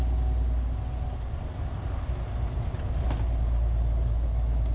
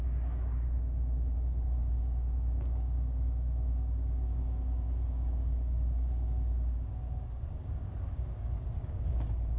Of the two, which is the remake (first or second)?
second